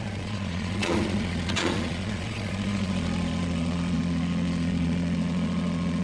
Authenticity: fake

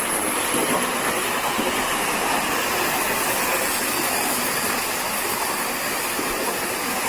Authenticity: real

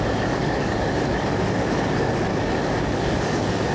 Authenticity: fake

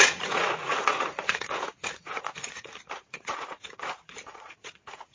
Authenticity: fake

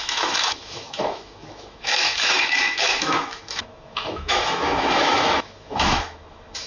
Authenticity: fake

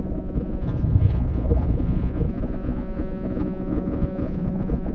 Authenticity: fake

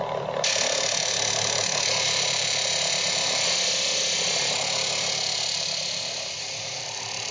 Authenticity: fake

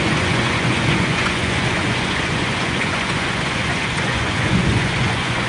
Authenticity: fake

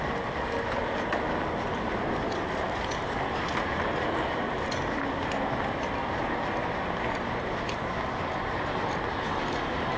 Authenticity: real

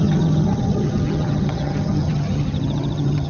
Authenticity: fake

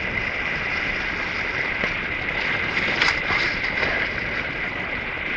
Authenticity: real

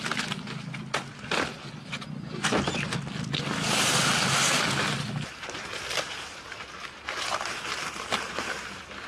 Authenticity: real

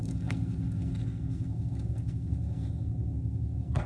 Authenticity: fake